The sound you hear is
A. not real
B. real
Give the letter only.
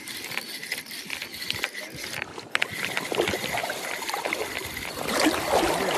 B